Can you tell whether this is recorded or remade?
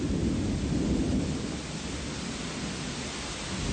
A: recorded